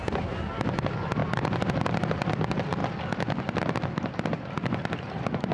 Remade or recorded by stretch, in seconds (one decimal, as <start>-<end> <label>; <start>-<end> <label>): 0.0-5.5 recorded